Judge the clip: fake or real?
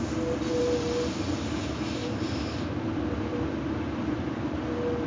real